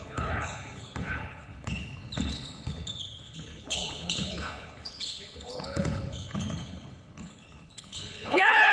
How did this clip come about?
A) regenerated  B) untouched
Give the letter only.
A